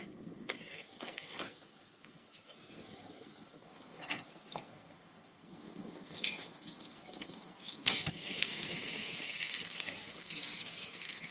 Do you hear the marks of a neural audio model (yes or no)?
yes